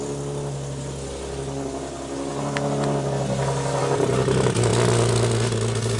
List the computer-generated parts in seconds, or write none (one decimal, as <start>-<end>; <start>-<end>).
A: none